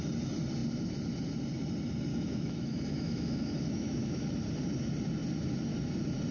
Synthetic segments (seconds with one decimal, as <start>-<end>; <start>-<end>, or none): 2.1-4.2